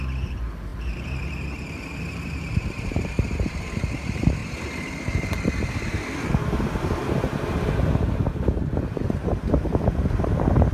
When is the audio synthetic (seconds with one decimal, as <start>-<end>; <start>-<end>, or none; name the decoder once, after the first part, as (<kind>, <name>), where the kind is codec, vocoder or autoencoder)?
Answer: 0.0-4.4 (vocoder, BigVGAN v2); 8.2-10.7